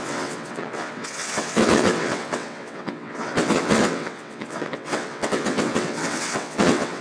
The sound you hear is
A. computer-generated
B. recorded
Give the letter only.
A